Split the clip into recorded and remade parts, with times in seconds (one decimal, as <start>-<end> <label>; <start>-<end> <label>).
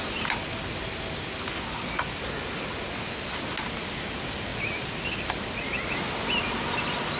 0.0-7.2 recorded